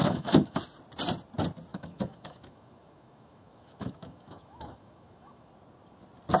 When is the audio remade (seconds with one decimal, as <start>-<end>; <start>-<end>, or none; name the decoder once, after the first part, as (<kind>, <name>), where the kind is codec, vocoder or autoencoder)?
0.0-0.6 (autoencoder, DAC-VAE); 1.7-5.5